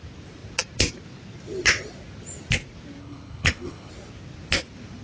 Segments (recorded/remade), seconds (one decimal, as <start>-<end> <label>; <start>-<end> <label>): 0.0-3.0 recorded; 3.0-3.9 remade; 3.9-5.0 recorded